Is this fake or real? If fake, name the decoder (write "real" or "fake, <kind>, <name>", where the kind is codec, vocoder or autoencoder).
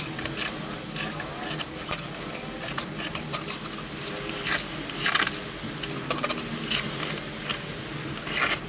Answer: real